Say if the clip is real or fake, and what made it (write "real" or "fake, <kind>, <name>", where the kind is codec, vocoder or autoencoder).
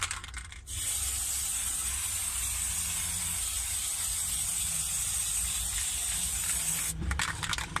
real